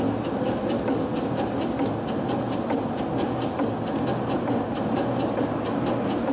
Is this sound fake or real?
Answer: real